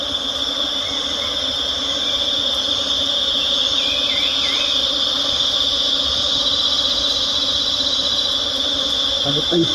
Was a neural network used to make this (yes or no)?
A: no